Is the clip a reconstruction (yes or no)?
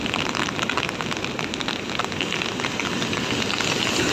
no